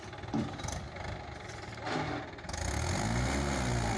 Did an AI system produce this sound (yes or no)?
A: no